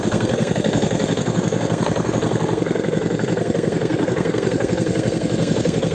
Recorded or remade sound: remade